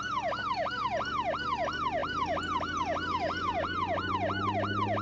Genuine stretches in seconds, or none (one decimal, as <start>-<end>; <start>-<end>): 0.0-5.0

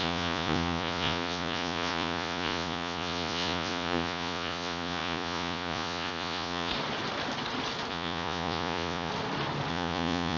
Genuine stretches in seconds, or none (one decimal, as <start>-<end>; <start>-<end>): 6.7-7.9; 9.1-9.7

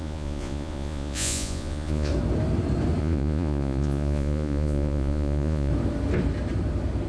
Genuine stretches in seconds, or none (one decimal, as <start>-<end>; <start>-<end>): 2.1-3.0; 5.7-7.1

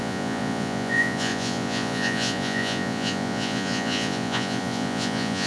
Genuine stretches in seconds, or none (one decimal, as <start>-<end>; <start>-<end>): none

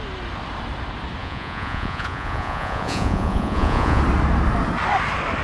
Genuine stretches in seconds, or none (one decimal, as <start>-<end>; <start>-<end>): 0.0-1.2; 4.0-5.4